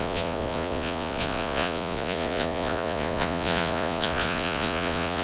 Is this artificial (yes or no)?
yes